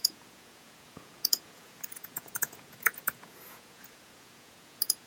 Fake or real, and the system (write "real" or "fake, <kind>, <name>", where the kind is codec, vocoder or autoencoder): fake, vocoder, Vocos